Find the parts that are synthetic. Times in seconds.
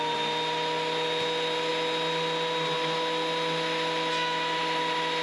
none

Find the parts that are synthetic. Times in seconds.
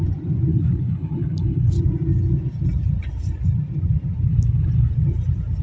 0.5-1.7 (codec, HILCodec); 4.3-4.9